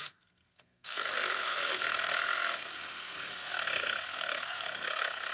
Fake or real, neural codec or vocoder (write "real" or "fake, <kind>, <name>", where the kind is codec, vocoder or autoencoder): fake, codec, SNAC